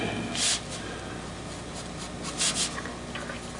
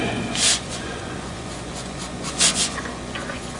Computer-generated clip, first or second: second